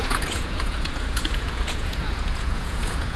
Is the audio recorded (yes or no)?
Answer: no